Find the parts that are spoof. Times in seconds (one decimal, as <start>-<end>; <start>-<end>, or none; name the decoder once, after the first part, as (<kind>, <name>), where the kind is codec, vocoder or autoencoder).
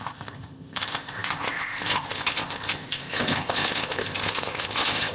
0.0-5.1 (codec, ZipCodec)